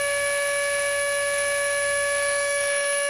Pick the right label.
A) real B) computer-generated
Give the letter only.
B